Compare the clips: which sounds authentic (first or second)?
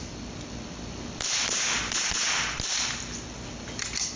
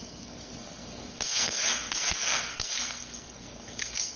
first